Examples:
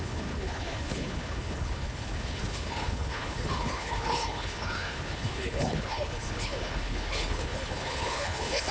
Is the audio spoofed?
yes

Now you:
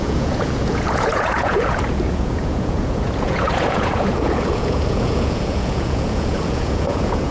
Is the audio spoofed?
yes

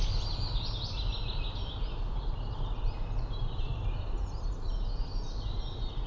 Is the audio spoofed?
no